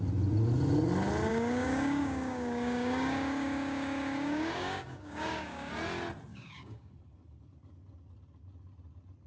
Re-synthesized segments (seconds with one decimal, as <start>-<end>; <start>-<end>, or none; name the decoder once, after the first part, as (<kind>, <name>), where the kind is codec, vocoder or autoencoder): 1.3-5.7 (codec, DAC); 6.3-6.9